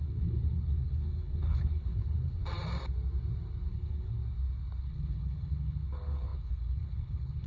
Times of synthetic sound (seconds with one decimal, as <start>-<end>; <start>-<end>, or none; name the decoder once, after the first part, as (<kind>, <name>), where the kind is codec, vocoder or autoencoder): 0.0-2.4 (codec, HILCodec); 3.7-4.2; 4.8-7.5